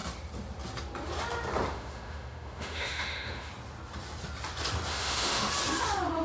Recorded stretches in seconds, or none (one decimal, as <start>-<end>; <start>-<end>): 0.0-1.7; 3.5-4.9; 5.5-6.2